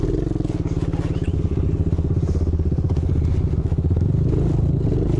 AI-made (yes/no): no